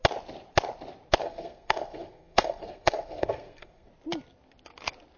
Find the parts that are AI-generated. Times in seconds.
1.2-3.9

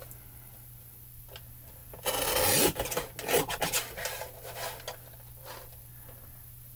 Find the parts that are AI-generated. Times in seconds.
none

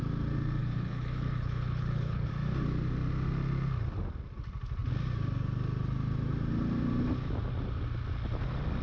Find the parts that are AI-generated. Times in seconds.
0.6-2.3

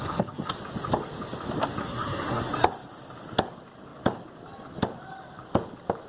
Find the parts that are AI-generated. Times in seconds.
0.0-0.5; 1.8-2.4

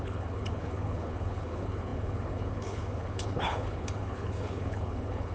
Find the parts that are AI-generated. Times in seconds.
0.0-5.3